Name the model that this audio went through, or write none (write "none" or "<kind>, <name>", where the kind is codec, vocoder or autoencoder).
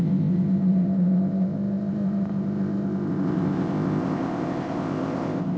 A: codec, ZipCodec